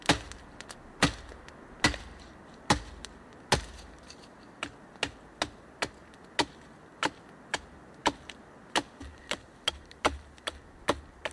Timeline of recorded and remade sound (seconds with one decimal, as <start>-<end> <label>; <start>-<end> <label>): 0.0-11.3 recorded